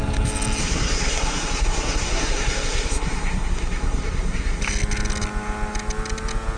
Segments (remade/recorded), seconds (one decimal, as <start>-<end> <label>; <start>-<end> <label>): 0.0-0.6 recorded; 0.6-4.6 remade; 4.6-6.6 recorded